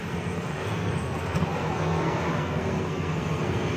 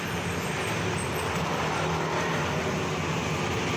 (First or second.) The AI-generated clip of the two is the first